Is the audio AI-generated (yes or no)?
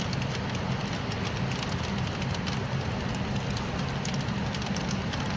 no